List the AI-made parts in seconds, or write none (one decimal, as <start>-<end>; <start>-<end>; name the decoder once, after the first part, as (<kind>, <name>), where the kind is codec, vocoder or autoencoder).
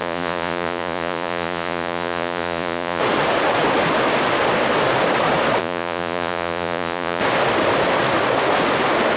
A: 0.0-3.0 (vocoder, Vocos); 5.6-7.2